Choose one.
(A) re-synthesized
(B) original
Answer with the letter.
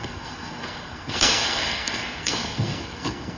A